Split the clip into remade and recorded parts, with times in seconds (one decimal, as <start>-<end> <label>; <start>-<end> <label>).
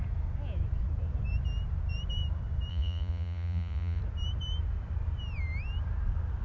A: 0.0-2.7 recorded; 2.7-4.0 remade; 4.0-6.4 recorded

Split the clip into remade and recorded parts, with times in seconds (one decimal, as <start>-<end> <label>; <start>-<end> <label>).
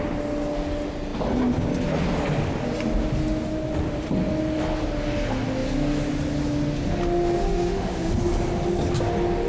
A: 0.0-7.5 recorded; 7.5-8.1 remade; 8.1-9.5 recorded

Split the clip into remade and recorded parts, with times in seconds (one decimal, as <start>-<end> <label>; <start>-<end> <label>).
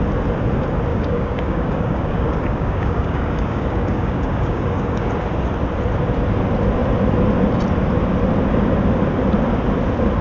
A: 0.0-0.9 recorded; 0.9-5.1 remade; 5.1-10.2 recorded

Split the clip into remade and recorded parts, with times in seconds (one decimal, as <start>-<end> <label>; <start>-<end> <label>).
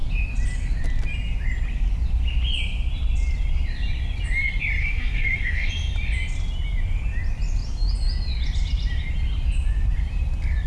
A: 0.0-4.8 recorded; 4.8-5.7 remade; 5.7-10.7 recorded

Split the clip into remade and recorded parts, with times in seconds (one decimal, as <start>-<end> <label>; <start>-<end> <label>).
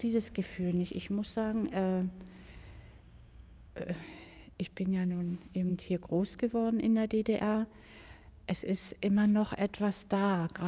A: 0.0-10.7 remade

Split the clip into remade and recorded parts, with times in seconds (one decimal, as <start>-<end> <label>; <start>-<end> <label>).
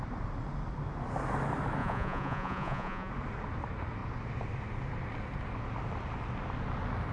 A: 0.0-1.8 recorded; 1.8-3.1 remade; 3.1-7.1 recorded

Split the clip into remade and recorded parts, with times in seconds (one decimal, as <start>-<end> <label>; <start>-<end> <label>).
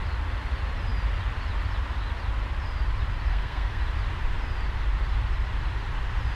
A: 0.0-3.3 recorded; 3.3-3.8 remade; 3.8-6.4 recorded